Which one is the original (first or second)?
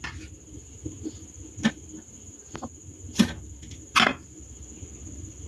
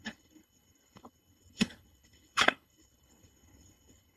first